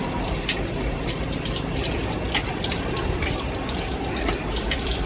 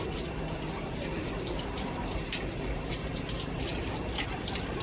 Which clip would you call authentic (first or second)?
second